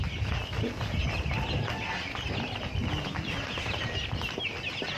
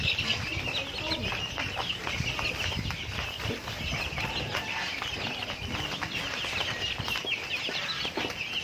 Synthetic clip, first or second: second